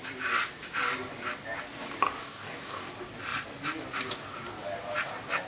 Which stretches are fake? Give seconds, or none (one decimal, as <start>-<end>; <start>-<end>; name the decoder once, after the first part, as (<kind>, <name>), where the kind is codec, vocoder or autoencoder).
2.2-2.9 (codec, DAC)